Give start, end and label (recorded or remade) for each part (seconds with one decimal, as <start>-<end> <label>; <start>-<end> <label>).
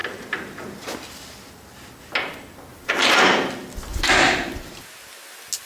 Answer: 0.0-2.7 recorded; 2.7-3.3 remade; 3.3-3.9 recorded; 3.9-4.7 remade; 4.7-5.7 recorded